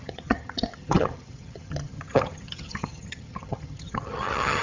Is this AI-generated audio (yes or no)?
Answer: yes